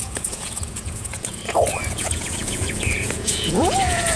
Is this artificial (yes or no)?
yes